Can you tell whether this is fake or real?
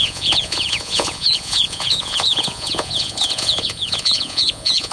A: fake